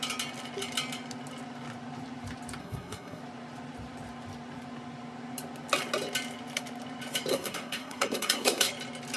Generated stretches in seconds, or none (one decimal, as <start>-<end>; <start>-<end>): 2.6-3.2; 7.3-8.7